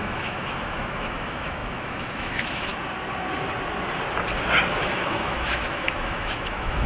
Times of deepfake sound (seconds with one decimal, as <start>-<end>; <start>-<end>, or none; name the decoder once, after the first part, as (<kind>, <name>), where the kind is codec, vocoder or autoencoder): 0.0-2.7 (autoencoder, DAC-VAE); 4.7-6.9